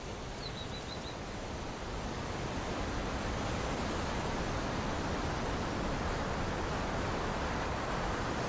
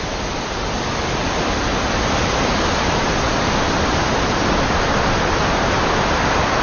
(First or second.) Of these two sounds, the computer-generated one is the first